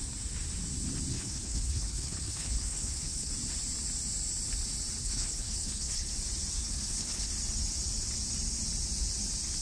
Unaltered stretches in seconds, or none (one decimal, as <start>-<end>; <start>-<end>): 0.0-1.1; 3.3-5.0; 6.1-6.6; 7.3-9.6